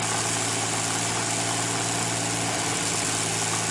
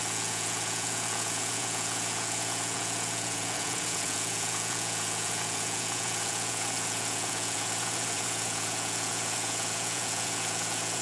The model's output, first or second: second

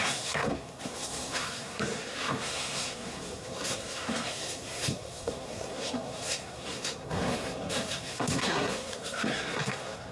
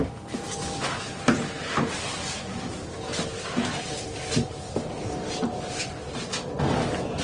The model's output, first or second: first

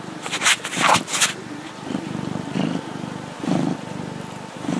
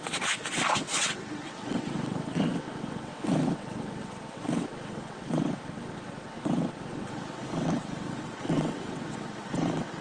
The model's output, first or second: second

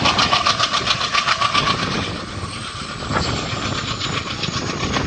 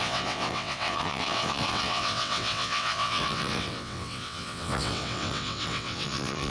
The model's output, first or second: second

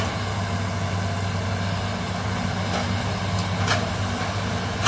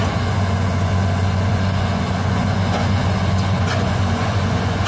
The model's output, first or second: second